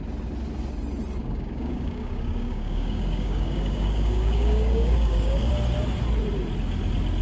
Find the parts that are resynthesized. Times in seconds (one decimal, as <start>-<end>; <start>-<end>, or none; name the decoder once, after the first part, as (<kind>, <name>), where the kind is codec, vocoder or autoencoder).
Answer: 1.2-5.5 (codec, DAC)